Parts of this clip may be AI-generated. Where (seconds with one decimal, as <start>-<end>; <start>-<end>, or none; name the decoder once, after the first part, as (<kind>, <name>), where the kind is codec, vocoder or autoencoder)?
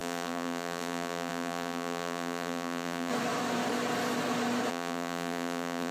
0.0-3.1 (vocoder, BigVGAN v2); 4.7-5.9